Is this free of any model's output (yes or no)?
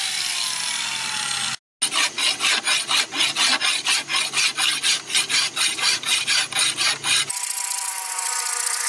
yes